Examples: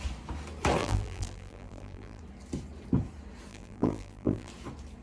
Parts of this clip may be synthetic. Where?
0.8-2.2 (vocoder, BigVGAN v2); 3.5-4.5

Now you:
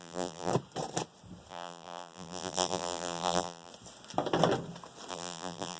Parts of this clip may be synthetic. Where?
0.0-0.5 (vocoder, BigVGAN v2); 1.5-3.7; 5.1-5.8

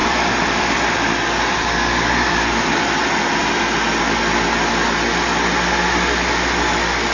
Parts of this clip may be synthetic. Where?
0.0-4.0 (vocoder, BigVGAN v2)

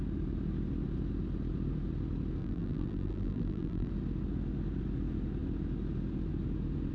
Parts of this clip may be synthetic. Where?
2.4-3.9 (vocoder, BigVGAN v2)

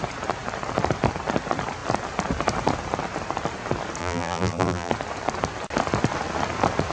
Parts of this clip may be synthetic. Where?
4.0-4.9 (vocoder, BigVGAN v2)

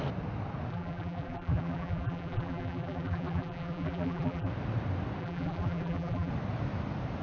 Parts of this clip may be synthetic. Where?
0.7-4.5 (vocoder, BigVGAN v2); 5.2-6.3

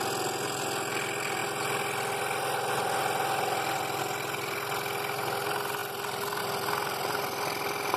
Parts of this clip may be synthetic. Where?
none